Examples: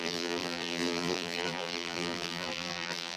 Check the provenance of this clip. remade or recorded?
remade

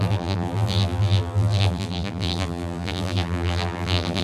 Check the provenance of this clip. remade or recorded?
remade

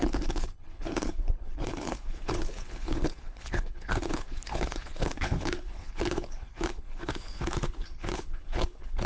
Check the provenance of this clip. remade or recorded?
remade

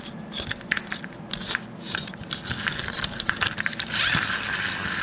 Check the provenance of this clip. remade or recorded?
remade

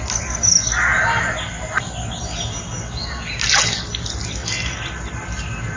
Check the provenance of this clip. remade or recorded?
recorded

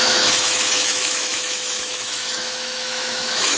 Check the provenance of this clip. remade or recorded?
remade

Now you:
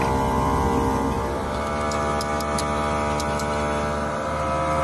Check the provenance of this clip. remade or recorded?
recorded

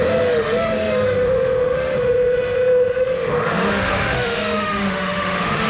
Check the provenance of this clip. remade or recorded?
remade